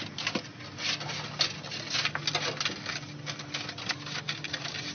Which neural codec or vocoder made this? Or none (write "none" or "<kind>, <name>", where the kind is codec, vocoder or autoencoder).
none